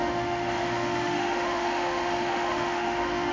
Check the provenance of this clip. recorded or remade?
remade